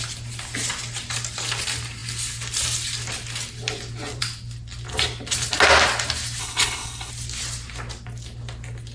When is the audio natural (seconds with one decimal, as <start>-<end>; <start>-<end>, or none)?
0.0-6.4; 7.1-8.9